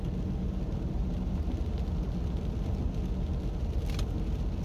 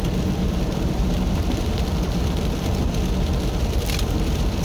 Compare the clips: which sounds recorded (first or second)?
first